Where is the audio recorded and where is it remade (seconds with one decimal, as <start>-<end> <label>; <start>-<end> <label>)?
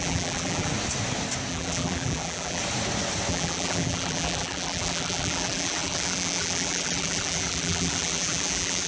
0.0-0.7 remade; 0.7-1.5 recorded; 1.5-2.6 remade; 2.6-3.3 recorded; 3.3-8.9 remade